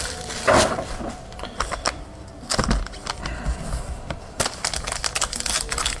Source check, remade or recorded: recorded